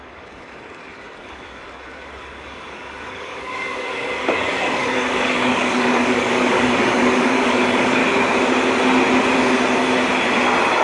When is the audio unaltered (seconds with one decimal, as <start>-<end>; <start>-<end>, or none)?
8.0-10.8